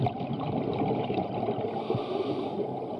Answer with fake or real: fake